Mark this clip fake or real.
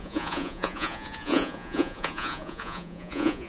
fake